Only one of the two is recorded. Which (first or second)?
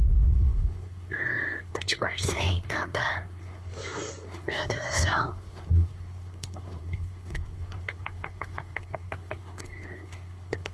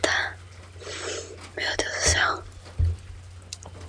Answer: second